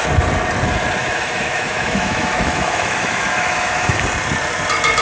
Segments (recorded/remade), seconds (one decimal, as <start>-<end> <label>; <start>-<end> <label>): 0.0-1.0 recorded; 1.0-4.0 remade; 4.0-5.0 recorded